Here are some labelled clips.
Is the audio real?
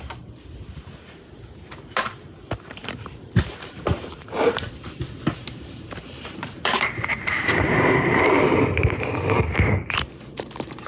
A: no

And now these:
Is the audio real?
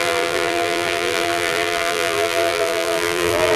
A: no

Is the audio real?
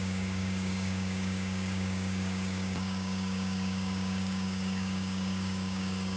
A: no